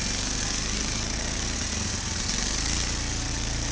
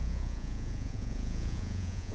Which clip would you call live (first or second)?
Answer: first